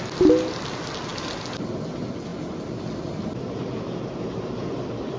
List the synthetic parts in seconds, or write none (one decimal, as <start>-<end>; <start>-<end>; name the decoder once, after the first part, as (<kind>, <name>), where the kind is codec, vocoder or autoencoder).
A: none